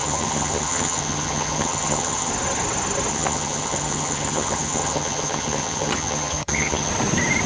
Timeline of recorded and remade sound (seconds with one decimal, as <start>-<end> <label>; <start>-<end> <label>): 0.0-2.3 remade; 2.3-3.1 recorded; 3.1-6.9 remade; 6.9-7.5 recorded

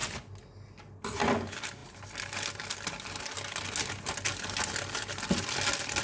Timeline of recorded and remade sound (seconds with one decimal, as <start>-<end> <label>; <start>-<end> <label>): 0.0-6.0 recorded

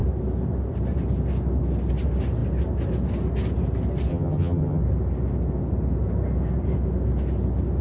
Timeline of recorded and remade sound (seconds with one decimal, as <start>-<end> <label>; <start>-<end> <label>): 0.0-4.1 recorded; 4.1-4.8 remade; 4.8-7.8 recorded

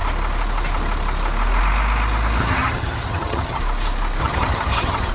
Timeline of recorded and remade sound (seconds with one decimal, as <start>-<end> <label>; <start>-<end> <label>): 0.0-2.4 recorded; 2.4-3.6 remade; 3.6-4.2 recorded; 4.2-5.1 remade